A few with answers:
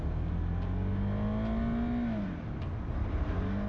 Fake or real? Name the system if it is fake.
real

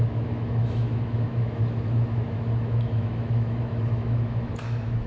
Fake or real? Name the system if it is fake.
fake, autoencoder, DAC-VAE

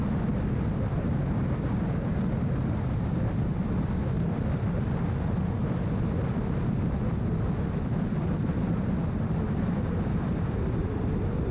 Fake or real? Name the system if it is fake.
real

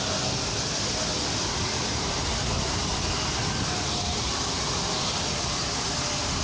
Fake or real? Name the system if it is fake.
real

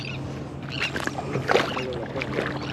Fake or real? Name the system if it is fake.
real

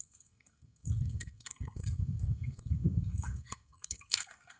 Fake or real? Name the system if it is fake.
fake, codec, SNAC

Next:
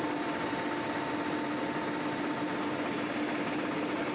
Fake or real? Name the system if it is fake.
real